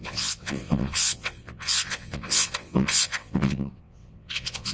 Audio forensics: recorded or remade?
remade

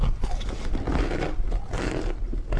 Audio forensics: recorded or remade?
recorded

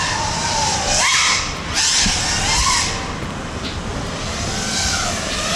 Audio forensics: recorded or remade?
recorded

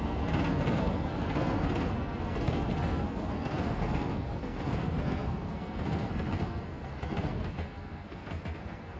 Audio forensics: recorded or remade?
remade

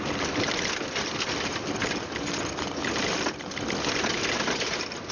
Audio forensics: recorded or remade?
recorded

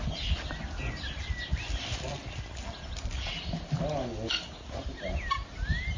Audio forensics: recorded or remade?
recorded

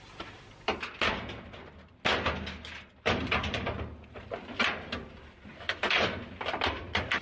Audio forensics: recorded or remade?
recorded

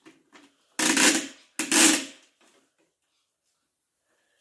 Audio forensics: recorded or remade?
recorded